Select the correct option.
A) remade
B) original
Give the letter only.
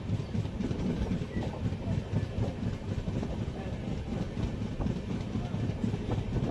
B